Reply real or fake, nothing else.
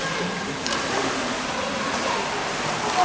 fake